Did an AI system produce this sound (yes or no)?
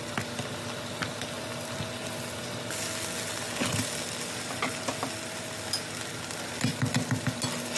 no